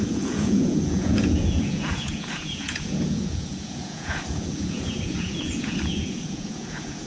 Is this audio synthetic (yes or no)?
yes